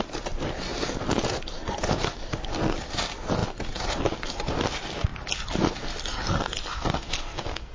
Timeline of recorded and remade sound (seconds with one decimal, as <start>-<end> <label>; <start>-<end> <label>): 0.0-6.7 recorded; 6.7-7.7 remade